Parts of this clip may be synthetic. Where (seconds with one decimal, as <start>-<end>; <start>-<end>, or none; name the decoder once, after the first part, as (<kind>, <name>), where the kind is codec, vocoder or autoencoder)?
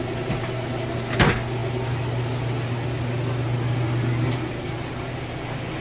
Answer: none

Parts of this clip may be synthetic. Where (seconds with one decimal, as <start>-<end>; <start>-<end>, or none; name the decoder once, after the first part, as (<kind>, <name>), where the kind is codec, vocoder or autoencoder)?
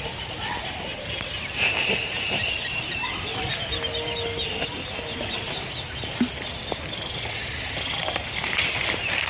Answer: 0.0-3.5 (vocoder, BigVGAN v2); 8.0-9.3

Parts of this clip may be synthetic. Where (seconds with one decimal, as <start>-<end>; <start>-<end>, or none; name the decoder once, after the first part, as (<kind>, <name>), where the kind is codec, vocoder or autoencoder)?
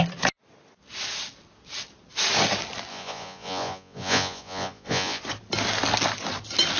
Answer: 2.9-5.2 (vocoder, Vocos)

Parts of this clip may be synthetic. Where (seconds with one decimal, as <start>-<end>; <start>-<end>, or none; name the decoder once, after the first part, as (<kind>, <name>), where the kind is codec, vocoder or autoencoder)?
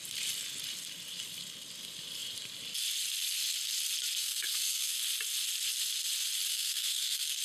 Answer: 4.2-4.9 (codec, SNAC); 6.5-7.4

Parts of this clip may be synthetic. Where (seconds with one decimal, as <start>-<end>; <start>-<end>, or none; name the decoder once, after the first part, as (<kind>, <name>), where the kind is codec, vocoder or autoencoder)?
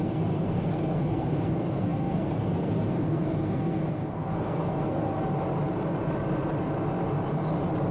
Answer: 0.0-5.1 (codec, SNAC)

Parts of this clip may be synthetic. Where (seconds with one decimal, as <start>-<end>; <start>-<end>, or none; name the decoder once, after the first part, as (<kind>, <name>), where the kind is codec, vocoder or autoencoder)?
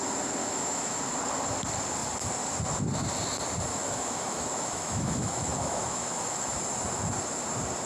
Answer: 0.4-1.0 (autoencoder, DAC-VAE); 3.7-6.6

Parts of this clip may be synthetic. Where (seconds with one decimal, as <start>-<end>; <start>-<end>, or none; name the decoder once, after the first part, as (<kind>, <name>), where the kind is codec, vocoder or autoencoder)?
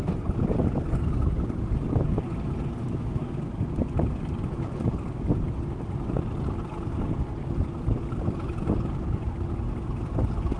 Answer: 2.8-3.4 (autoencoder, DAC-VAE)